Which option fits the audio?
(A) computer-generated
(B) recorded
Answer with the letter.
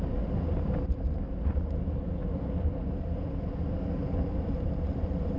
B